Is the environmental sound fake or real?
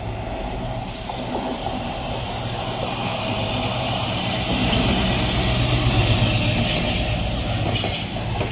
real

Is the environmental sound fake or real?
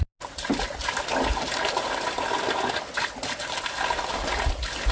real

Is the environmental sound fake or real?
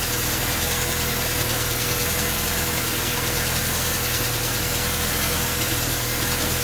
fake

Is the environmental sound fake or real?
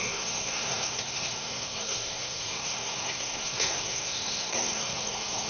fake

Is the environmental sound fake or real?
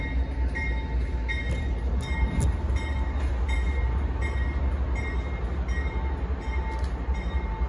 real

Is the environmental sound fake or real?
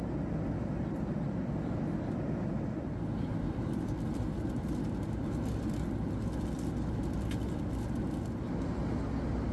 real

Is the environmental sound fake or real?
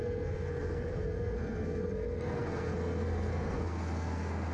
fake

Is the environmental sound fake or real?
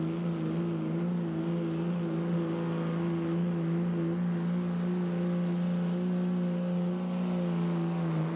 real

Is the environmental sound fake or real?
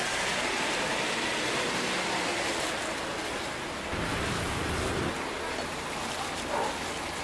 real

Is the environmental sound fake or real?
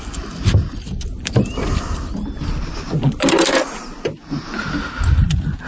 real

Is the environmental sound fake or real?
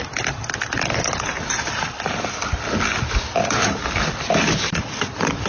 real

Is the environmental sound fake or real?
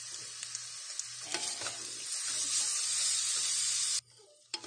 real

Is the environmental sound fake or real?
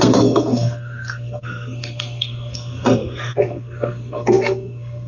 fake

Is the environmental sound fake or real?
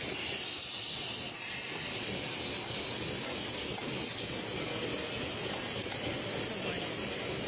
real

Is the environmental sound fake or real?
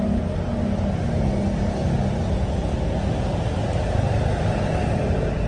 real